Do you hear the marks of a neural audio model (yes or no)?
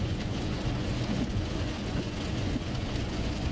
yes